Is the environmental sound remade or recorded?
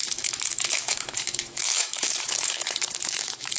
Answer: remade